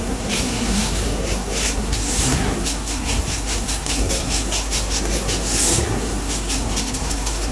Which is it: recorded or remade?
remade